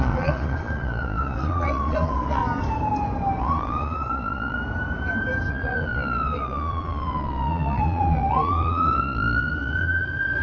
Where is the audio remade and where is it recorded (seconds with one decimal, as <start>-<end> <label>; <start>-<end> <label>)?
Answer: 0.0-2.4 remade; 2.4-3.4 recorded; 3.4-4.6 remade; 4.6-5.5 recorded; 5.5-10.4 remade